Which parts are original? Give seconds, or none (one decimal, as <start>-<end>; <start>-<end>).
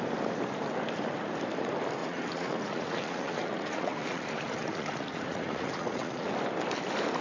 0.0-2.0; 6.3-7.2